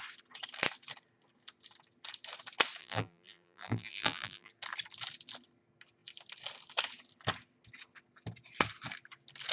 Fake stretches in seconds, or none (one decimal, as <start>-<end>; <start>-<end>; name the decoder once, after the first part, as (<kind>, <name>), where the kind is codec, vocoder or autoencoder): 2.8-4.5 (vocoder, BigVGAN v2)